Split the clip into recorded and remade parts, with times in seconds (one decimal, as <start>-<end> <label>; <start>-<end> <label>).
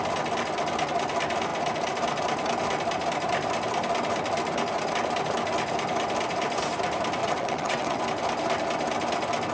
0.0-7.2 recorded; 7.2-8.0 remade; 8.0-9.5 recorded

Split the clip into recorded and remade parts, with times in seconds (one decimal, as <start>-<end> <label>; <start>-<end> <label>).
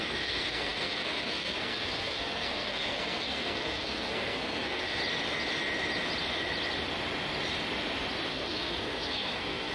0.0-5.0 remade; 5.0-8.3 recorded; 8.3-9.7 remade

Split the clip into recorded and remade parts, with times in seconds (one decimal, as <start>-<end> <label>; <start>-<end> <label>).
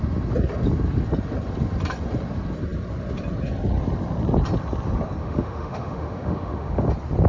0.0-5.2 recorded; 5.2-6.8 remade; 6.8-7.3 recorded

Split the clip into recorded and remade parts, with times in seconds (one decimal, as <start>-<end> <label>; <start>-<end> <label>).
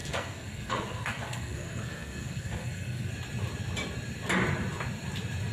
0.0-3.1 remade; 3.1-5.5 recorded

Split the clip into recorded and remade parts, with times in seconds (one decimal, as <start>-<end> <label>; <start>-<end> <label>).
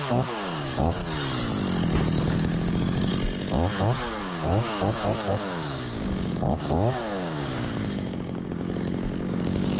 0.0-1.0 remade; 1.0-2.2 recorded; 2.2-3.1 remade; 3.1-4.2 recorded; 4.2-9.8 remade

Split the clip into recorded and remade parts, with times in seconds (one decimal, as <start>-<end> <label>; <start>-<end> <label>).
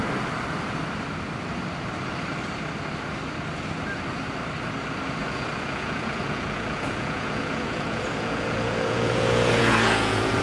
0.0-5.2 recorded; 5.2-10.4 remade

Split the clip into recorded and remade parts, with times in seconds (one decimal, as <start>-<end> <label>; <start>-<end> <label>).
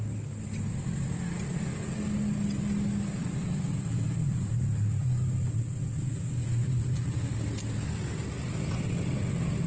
0.0-3.2 recorded; 3.2-7.3 remade; 7.3-9.7 recorded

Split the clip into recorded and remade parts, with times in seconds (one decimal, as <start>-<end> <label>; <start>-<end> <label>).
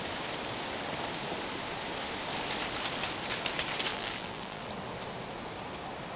0.0-3.9 recorded; 3.9-4.6 remade; 4.6-6.2 recorded